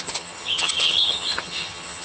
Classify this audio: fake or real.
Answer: fake